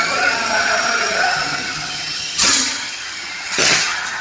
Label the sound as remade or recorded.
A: remade